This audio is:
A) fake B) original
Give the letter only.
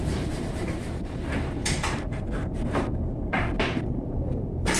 A